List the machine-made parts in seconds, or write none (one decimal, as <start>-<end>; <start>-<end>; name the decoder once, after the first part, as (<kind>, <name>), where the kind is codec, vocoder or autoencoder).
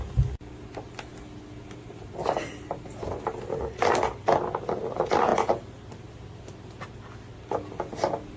none